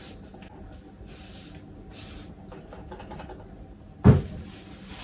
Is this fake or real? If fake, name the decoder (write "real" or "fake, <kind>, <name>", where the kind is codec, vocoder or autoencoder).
real